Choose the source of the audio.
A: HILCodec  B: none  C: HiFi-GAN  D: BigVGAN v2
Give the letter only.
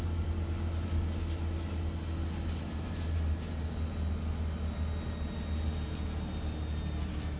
B